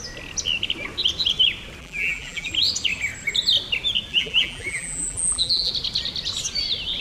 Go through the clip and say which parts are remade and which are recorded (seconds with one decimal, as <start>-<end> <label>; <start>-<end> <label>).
0.0-1.8 recorded; 1.8-2.5 remade; 2.5-4.1 recorded; 4.1-5.7 remade; 5.7-7.0 recorded